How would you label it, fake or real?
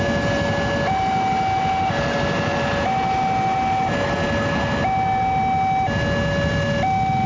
real